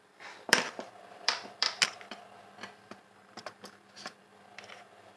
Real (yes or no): no